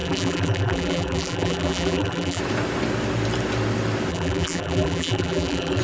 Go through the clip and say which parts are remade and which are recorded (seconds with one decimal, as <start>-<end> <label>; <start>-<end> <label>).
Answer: 0.0-2.4 remade; 2.4-4.1 recorded; 4.1-5.8 remade